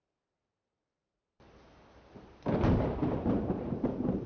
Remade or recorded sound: remade